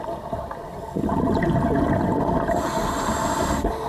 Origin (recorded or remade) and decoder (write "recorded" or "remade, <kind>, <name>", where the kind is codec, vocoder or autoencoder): recorded